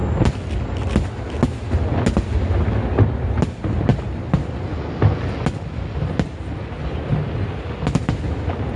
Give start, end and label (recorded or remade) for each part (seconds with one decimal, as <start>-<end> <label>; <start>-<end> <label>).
0.0-8.8 recorded